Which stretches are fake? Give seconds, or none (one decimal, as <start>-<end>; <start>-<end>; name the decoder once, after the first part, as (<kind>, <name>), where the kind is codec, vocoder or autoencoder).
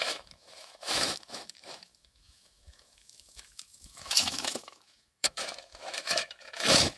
0.0-7.0 (autoencoder, DAC-VAE)